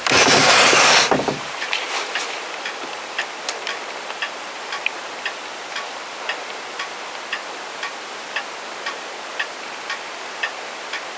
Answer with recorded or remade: remade